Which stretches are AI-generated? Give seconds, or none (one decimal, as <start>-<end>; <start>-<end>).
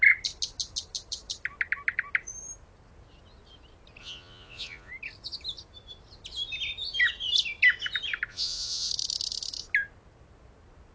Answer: 4.0-4.9; 8.3-8.9